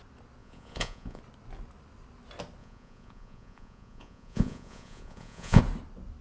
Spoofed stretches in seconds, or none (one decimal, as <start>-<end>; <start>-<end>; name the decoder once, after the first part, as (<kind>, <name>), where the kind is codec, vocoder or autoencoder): 0.4-1.2 (vocoder, Vocos); 2.6-5.6